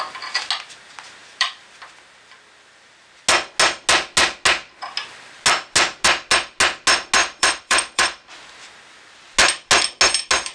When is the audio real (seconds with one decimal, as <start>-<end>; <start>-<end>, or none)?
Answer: 0.0-1.2; 1.8-7.2; 8.3-10.5

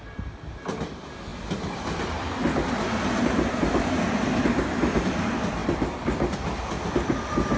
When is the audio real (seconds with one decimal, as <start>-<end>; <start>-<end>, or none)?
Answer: 1.3-5.0